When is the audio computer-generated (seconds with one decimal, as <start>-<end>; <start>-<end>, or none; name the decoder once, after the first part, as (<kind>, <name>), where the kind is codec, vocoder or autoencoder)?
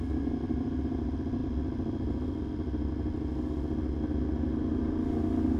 none